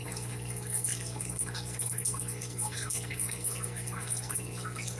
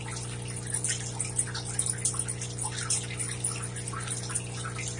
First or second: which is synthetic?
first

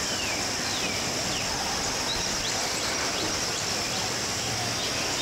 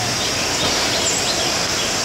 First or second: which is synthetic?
second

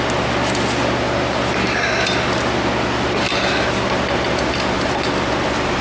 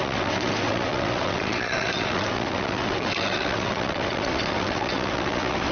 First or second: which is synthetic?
second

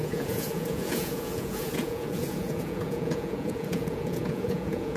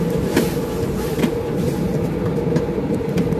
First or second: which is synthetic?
first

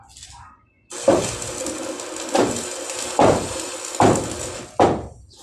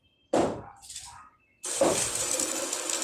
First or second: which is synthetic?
second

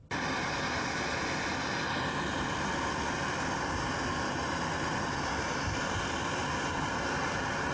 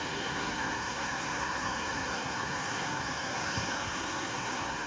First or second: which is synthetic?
second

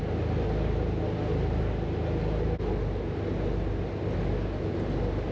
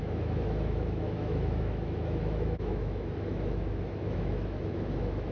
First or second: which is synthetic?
second